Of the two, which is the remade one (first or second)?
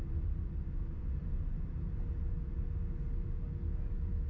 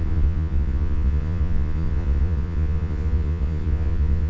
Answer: second